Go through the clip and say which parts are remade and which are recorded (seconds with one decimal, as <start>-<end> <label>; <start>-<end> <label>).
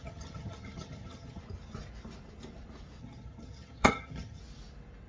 0.0-1.4 remade; 1.4-3.0 recorded; 3.0-4.4 remade; 4.4-5.1 recorded